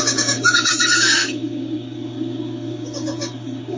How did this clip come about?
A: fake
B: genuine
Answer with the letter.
A